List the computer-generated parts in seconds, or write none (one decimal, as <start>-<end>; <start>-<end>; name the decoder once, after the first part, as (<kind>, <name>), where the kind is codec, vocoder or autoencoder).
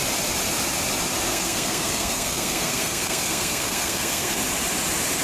1.3-4.4 (codec, SNAC)